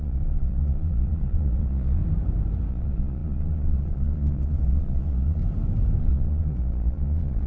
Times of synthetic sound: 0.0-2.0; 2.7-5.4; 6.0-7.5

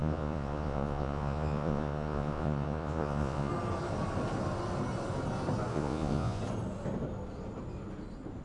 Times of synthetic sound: 0.0-3.5; 5.7-6.4

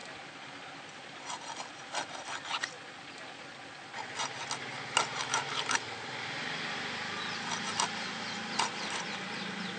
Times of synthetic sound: none